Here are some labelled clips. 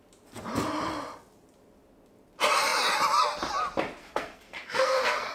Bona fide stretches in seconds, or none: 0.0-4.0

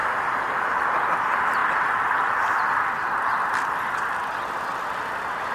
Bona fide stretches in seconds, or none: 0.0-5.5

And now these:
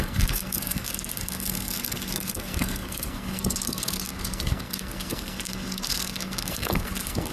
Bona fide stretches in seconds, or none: none

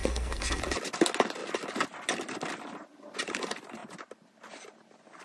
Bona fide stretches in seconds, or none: 0.6-5.2

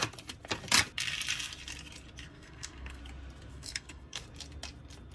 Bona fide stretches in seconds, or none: 0.0-2.3; 3.0-3.5; 4.2-5.1